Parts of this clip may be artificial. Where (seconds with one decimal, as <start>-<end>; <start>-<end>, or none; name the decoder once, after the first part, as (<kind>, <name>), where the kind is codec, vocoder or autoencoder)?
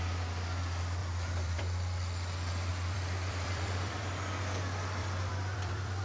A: 1.0-1.6 (vocoder, BigVGAN v2); 2.7-4.1; 5.0-6.0